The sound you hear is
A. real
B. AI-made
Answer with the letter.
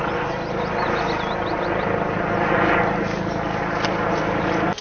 A